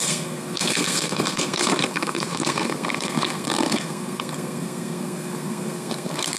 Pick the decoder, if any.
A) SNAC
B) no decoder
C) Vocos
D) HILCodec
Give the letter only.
A